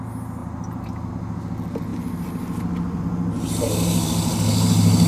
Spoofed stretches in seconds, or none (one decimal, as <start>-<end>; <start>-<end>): none